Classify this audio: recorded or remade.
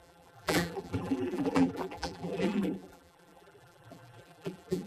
remade